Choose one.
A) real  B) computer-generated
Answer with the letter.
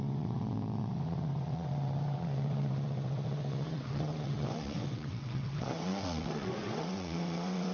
B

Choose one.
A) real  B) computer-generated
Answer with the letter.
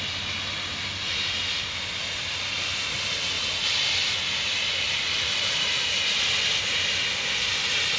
A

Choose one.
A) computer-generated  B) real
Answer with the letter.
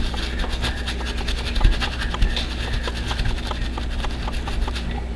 B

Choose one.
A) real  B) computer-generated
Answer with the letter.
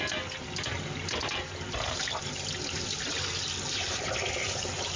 A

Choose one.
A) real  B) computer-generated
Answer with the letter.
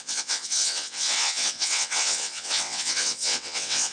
B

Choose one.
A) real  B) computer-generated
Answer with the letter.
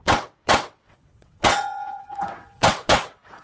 B